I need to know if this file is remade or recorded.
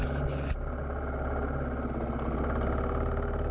recorded